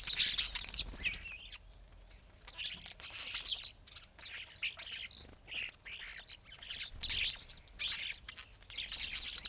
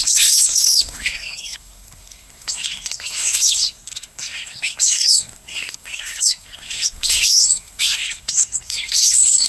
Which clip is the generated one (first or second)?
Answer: second